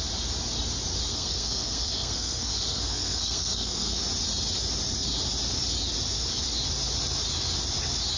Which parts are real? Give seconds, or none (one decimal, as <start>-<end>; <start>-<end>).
0.0-1.1; 4.0-8.2